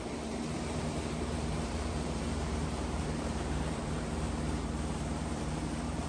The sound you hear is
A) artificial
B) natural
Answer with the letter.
A